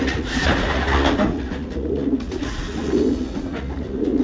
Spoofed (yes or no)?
yes